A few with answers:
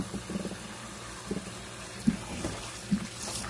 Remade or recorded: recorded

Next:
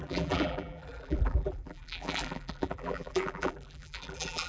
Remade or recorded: remade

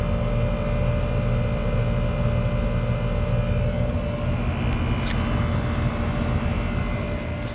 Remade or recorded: recorded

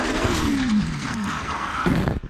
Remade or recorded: remade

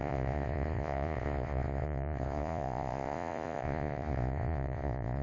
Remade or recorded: remade